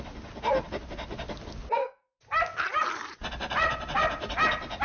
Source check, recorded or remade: recorded